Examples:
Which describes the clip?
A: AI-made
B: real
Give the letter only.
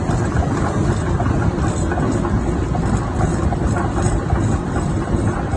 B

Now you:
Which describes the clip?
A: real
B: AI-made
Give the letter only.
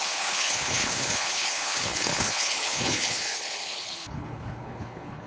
B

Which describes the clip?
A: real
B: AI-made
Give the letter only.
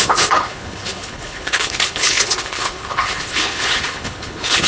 B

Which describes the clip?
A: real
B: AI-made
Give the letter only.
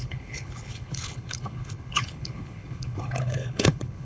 B